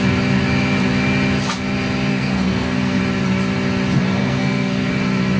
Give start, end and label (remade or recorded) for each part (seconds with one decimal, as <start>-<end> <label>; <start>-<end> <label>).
0.0-2.1 recorded; 2.1-3.0 remade; 3.0-4.2 recorded; 4.2-4.9 remade; 4.9-5.4 recorded